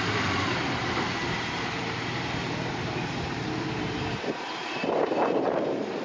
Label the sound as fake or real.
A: fake